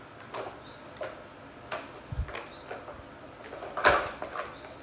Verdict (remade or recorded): recorded